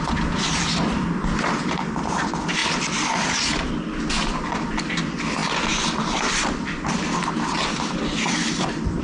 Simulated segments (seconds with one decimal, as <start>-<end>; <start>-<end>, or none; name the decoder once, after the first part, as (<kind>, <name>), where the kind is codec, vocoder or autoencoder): none